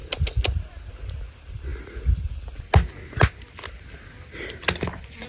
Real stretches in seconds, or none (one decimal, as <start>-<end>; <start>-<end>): 0.0-5.3